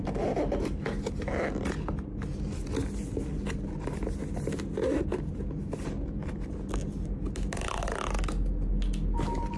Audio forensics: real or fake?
real